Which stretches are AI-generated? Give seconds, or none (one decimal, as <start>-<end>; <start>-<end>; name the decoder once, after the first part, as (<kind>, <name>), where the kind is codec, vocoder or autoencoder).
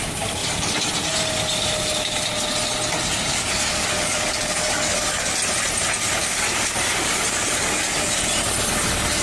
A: 0.4-0.9 (codec, DAC); 3.3-5.2; 6.2-8.2